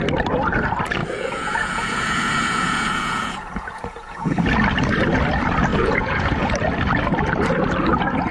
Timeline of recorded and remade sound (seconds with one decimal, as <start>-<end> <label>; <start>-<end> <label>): 0.0-1.0 recorded; 1.0-4.4 remade; 4.4-5.7 recorded; 5.7-6.5 remade; 6.5-8.3 recorded